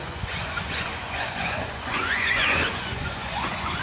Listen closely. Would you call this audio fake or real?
fake